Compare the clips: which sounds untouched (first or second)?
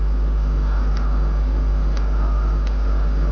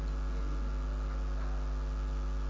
second